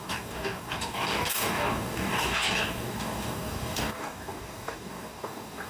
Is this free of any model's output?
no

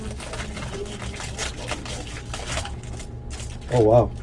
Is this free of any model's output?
yes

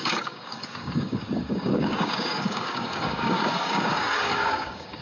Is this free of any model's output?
no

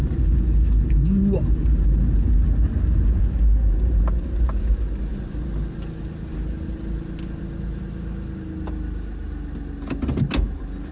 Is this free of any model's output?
yes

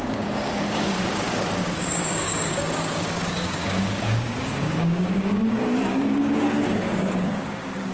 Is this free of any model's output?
no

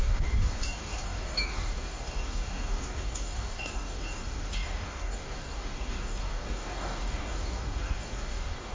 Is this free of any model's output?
no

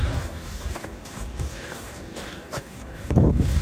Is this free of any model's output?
no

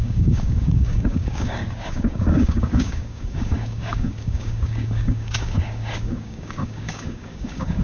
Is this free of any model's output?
no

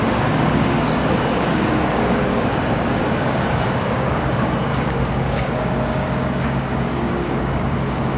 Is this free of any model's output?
no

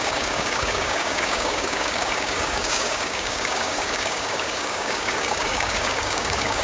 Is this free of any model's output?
no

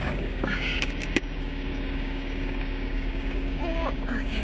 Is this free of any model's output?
no